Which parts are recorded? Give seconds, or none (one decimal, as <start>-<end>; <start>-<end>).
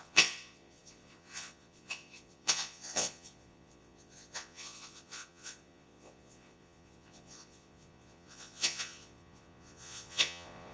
none